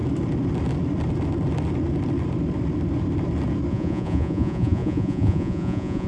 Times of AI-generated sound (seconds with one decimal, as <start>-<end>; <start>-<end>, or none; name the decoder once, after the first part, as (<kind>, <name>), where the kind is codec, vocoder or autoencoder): 3.7-6.1 (vocoder, Vocos)